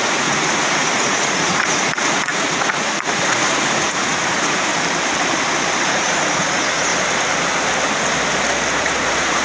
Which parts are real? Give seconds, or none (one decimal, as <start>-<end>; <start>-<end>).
4.7-5.8; 6.9-8.7